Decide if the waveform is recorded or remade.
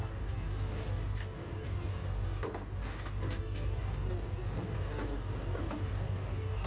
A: remade